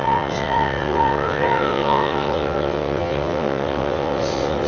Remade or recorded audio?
remade